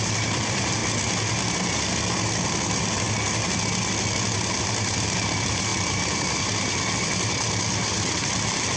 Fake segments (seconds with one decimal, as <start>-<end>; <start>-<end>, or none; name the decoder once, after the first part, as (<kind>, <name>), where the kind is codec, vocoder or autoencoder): 0.0-0.8 (vocoder, BigVGAN v2); 4.5-8.8